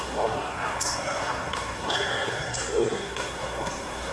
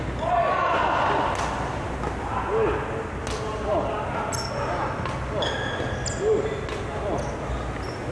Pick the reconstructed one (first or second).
first